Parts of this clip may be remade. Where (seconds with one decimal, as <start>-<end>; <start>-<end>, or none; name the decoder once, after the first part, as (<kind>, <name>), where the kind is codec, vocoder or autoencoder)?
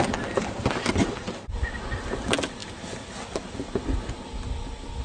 none